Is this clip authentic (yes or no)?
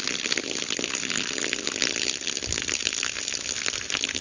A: yes